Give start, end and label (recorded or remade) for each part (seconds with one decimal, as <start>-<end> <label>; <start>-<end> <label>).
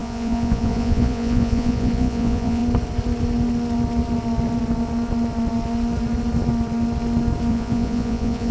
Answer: 0.0-2.6 remade; 2.6-7.5 recorded; 7.5-8.5 remade